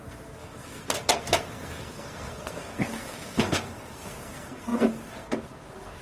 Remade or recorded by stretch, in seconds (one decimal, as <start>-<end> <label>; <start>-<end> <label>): 0.0-6.0 remade